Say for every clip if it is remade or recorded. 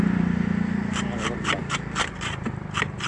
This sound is remade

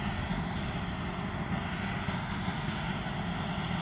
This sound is recorded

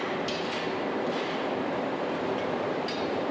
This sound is recorded